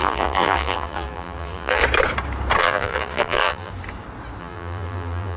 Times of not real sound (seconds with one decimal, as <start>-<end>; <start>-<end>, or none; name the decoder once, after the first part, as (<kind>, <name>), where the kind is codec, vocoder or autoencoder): 0.0-1.8 (vocoder, BigVGAN v2); 2.6-3.7; 4.4-5.4